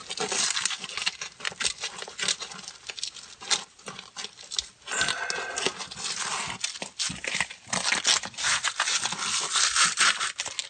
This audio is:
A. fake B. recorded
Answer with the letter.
B